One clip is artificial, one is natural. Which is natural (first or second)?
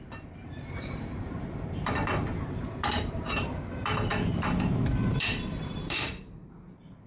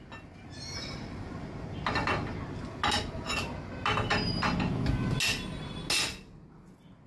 second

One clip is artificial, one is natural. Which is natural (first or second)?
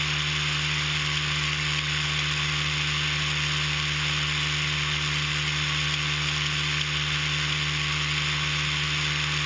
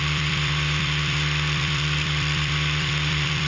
first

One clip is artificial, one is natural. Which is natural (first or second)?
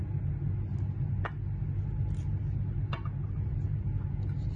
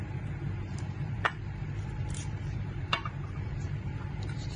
first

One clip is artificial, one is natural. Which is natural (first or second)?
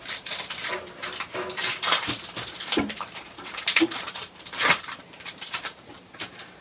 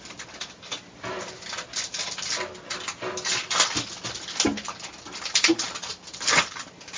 second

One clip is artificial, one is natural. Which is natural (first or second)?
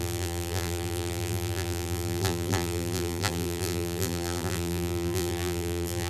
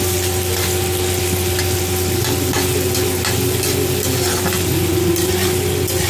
second